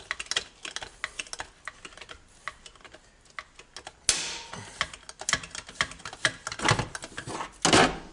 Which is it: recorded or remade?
recorded